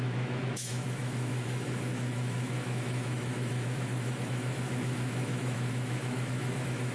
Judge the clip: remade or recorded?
remade